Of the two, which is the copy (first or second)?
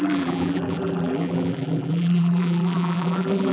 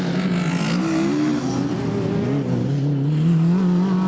first